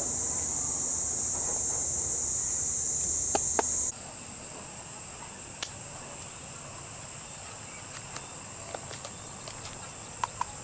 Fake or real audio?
real